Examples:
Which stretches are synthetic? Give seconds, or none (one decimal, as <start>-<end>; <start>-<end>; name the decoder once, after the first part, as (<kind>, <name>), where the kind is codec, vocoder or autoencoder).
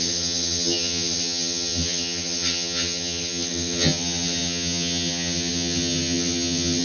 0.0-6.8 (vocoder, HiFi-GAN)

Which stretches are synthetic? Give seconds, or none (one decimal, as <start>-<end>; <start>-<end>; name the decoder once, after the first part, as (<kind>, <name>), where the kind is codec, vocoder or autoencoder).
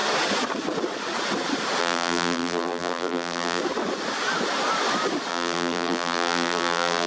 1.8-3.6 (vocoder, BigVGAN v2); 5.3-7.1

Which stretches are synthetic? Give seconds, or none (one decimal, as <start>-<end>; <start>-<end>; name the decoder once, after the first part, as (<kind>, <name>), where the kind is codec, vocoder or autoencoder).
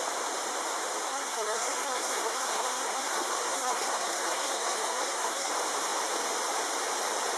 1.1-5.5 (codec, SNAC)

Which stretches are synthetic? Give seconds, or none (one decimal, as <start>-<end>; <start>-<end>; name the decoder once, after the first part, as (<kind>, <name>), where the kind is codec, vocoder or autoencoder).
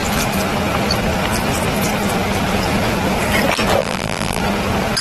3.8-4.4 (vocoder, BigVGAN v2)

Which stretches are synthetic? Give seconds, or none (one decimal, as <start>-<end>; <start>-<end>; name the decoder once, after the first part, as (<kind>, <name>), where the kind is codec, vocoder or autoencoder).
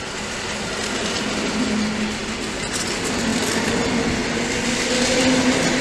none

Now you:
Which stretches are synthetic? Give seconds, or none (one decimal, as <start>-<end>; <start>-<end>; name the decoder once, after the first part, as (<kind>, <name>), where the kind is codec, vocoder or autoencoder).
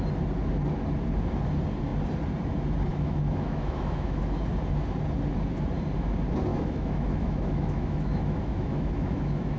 2.9-4.4 (autoencoder, DAC-VAE); 6.5-9.6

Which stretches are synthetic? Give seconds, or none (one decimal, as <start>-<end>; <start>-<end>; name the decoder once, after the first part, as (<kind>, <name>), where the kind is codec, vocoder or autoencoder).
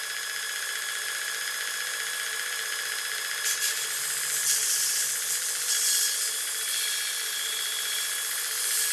none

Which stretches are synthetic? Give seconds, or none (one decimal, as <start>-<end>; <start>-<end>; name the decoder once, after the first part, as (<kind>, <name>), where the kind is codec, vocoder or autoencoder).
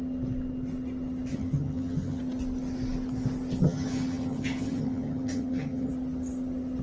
1.3-2.2 (vocoder, HiFi-GAN); 3.6-5.9